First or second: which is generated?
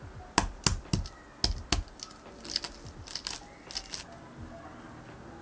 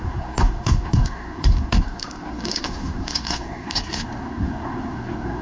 second